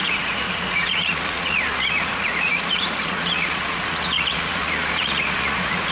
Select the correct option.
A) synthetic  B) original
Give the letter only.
A